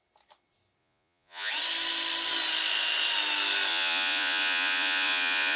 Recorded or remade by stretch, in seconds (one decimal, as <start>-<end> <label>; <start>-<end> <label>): 0.0-0.8 recorded; 0.8-1.5 remade; 1.5-3.7 recorded; 3.7-5.6 remade